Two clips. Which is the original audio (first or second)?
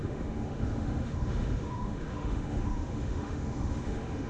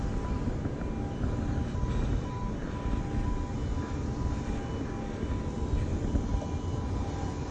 second